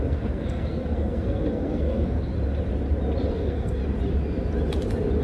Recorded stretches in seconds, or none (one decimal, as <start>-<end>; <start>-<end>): 2.3-3.3; 3.8-5.2